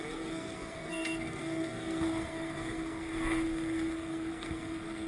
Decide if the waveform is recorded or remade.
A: remade